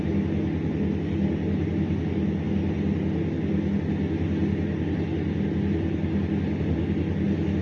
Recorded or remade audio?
recorded